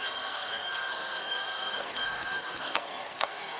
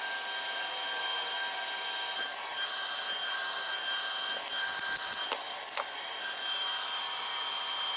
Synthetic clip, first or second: first